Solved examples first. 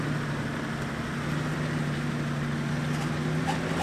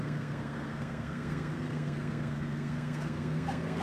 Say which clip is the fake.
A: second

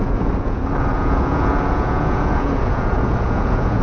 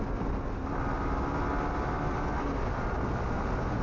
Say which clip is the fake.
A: first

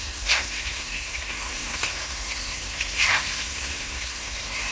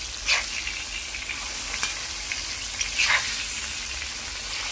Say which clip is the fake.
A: first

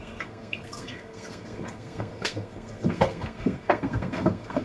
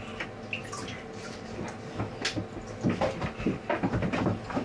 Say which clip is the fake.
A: first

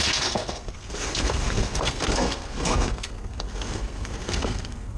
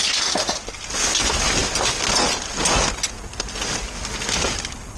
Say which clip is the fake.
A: first